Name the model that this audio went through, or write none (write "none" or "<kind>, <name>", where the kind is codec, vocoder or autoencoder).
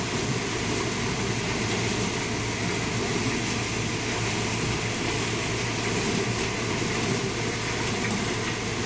none